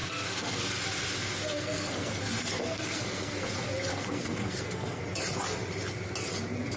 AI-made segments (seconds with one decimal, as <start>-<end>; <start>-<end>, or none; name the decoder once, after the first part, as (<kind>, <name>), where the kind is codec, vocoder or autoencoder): 0.0-0.8 (codec, SNAC); 1.3-3.5; 3.9-5.0